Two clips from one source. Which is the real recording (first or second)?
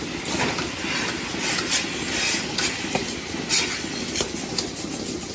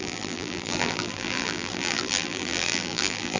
first